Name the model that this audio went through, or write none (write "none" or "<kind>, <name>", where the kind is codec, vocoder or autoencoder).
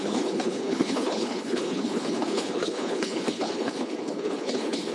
codec, HILCodec